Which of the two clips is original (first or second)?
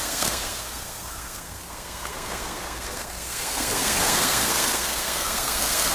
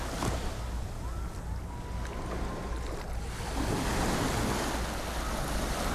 second